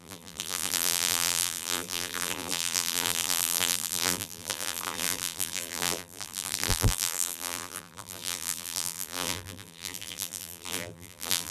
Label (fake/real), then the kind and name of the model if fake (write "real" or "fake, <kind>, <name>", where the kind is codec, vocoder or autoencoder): fake, vocoder, BigVGAN v2